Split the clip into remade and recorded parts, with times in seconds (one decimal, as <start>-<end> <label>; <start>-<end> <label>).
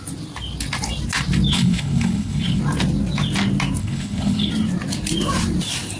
0.0-1.5 recorded; 1.5-2.6 remade; 2.6-3.8 recorded; 3.8-4.5 remade; 4.5-6.0 recorded